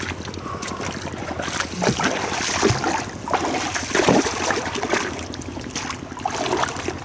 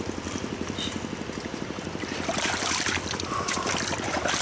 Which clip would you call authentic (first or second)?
first